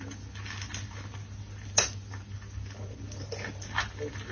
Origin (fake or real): real